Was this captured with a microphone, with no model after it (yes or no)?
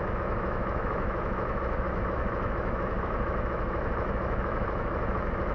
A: no